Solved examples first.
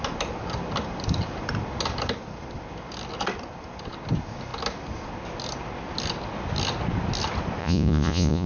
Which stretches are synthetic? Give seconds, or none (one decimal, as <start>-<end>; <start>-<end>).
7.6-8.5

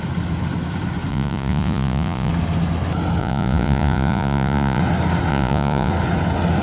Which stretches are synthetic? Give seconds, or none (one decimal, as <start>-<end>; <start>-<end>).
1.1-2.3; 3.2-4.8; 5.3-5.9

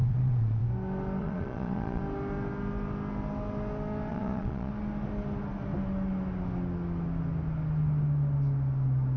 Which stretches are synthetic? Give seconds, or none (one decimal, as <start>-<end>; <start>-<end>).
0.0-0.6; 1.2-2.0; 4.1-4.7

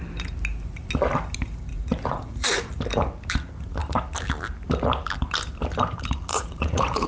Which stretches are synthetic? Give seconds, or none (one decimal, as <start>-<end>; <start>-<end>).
1.7-2.6; 6.3-7.1

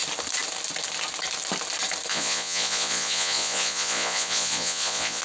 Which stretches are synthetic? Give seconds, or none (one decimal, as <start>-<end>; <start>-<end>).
2.1-5.2